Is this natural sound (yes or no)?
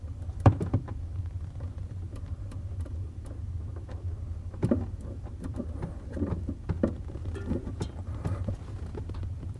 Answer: no